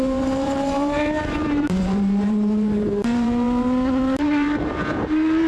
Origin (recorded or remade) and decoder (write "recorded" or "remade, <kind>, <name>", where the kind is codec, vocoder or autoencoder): remade, vocoder, BigVGAN v2